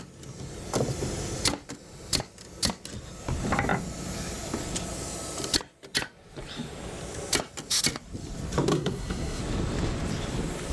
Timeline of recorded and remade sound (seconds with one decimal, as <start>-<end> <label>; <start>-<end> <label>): 0.0-8.7 recorded; 8.7-9.4 remade; 9.4-10.7 recorded